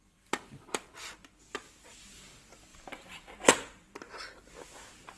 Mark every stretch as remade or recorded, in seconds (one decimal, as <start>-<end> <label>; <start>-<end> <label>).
0.0-2.7 recorded; 2.7-3.3 remade; 3.3-5.2 recorded